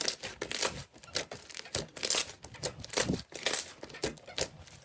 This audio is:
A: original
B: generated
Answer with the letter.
A